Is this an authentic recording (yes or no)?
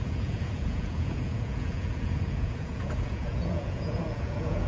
no